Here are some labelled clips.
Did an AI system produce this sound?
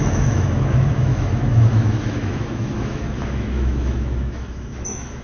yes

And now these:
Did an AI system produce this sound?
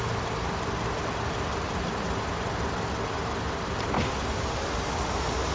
no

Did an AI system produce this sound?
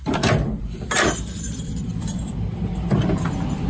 yes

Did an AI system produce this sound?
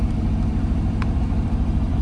yes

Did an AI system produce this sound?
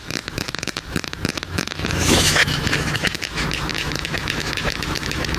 yes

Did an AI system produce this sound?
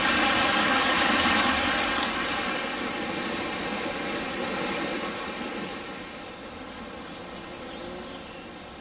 no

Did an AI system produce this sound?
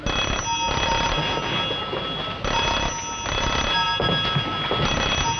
no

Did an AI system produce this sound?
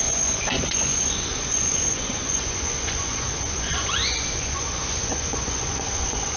yes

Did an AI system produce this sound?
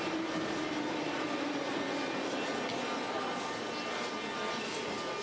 no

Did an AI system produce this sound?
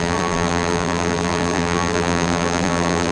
yes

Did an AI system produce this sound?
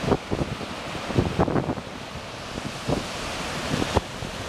no